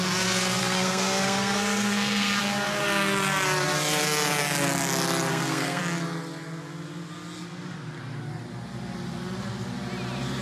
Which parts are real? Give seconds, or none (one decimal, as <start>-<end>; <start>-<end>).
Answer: 0.0-0.6; 2.4-5.3; 5.8-10.4